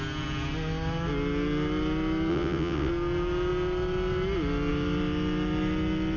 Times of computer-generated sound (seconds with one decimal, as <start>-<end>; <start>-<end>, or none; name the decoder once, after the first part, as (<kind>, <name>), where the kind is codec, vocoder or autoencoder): 2.3-2.9 (vocoder, WaveNeXt)